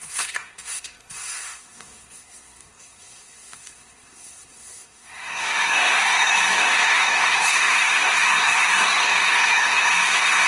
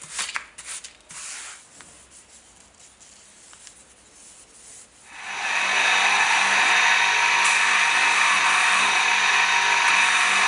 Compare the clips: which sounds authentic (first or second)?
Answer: second